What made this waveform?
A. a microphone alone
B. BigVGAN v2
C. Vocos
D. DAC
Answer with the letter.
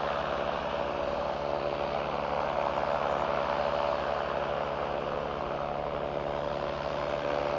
A